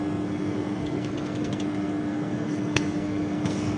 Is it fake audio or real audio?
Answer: fake